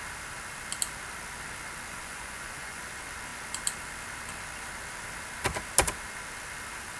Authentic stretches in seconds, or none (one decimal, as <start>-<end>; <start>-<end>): 0.0-1.9; 2.8-7.0